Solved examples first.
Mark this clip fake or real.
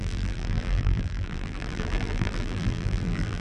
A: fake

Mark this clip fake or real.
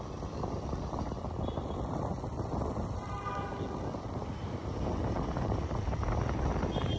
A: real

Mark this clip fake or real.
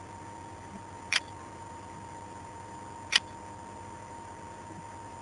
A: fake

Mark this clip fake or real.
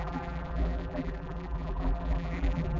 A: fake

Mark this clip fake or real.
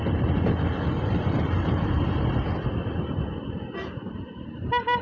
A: fake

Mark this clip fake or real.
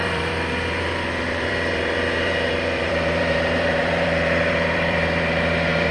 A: fake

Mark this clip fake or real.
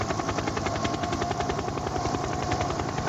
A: fake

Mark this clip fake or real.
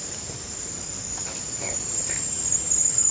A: fake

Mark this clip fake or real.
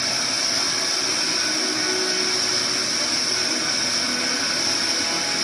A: real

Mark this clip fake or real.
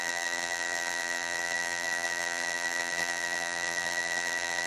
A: fake